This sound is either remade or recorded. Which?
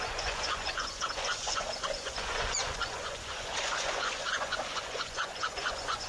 remade